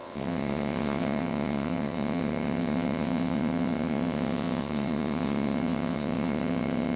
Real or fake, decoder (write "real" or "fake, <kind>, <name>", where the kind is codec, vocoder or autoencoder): fake, vocoder, WaveNeXt